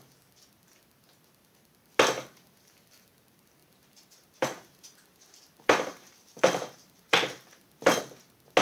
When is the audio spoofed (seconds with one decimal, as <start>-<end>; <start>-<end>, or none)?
3.6-8.0